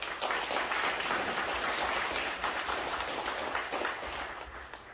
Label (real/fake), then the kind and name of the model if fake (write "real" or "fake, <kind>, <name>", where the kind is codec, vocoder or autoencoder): real